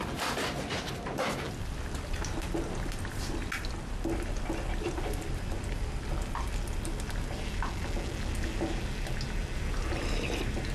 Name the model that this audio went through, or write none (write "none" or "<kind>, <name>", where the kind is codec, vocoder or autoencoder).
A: none